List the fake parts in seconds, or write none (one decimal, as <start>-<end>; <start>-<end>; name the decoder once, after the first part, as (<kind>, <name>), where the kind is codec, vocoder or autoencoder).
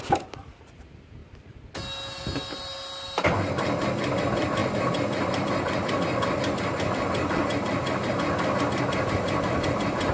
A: none